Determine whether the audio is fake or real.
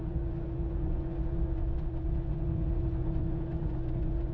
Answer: fake